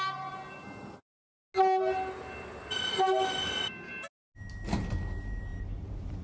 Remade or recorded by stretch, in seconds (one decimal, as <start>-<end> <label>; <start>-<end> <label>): 0.0-6.2 recorded